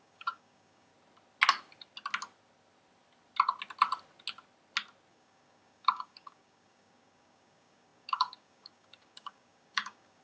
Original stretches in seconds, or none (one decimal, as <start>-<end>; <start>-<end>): 0.9-5.1